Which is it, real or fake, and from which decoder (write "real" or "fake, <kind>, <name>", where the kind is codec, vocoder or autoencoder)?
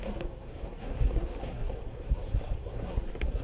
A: fake, codec, SNAC